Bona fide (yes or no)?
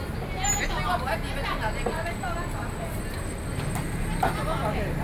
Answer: yes